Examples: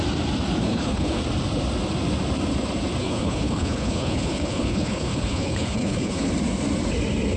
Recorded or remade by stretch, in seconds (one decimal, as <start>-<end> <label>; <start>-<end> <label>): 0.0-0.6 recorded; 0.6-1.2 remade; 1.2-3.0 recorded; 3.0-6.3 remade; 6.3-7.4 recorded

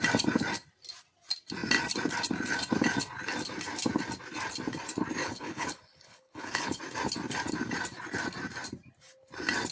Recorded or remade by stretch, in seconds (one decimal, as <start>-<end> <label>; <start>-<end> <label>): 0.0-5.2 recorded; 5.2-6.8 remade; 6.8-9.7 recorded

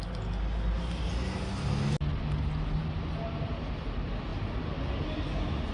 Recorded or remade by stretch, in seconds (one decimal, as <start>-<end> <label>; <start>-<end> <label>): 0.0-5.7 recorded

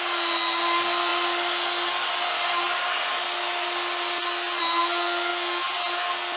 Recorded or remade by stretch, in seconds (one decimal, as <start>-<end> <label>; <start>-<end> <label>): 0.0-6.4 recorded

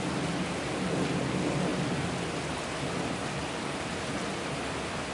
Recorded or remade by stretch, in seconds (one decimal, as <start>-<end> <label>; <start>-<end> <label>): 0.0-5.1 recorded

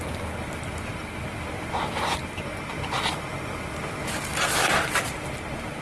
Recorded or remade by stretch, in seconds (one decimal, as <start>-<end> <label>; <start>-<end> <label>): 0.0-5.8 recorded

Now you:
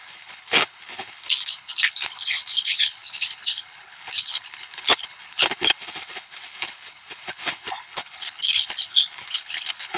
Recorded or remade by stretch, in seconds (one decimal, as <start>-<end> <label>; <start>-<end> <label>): 0.0-10.0 remade

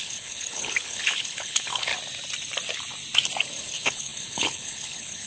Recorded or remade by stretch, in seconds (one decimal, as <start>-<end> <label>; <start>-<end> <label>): 0.0-1.9 remade; 1.9-3.5 recorded; 3.5-5.3 remade